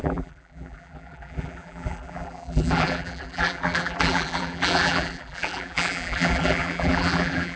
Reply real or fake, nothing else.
fake